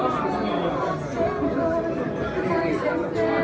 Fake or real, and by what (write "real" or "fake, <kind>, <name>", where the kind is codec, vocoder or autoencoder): real